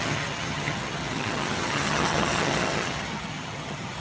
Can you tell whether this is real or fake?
fake